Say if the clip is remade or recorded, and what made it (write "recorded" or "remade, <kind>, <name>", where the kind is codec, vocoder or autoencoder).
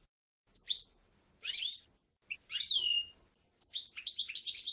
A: recorded